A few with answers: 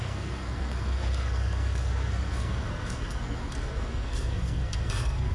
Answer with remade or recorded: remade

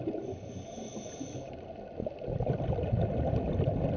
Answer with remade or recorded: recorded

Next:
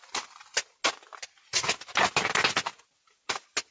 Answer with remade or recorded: recorded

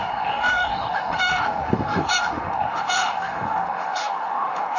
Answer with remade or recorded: remade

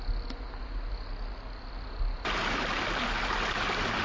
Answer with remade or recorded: recorded